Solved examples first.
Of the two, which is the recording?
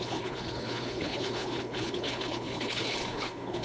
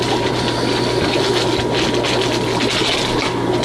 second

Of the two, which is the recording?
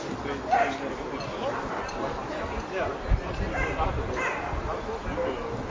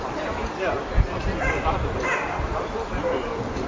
first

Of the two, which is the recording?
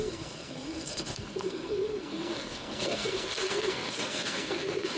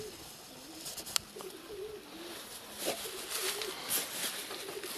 second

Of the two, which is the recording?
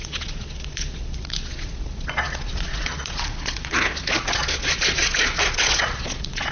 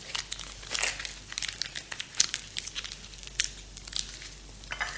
second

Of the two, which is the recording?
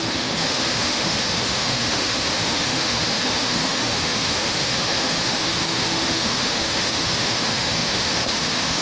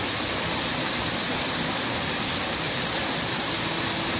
second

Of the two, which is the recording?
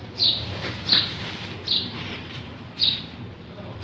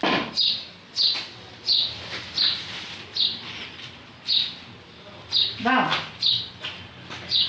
second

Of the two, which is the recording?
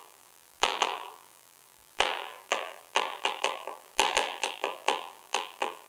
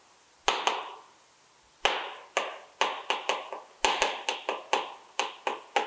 second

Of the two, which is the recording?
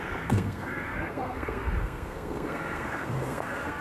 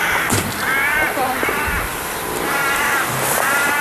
second